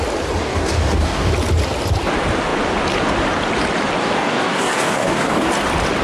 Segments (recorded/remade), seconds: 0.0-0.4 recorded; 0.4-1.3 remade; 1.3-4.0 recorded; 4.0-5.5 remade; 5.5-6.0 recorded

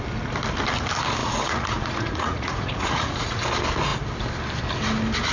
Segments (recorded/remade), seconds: 0.0-1.2 recorded; 1.2-3.4 remade; 3.4-5.3 recorded

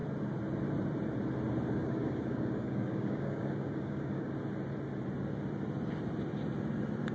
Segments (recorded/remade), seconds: 0.0-1.8 recorded; 1.8-4.3 remade; 4.3-7.1 recorded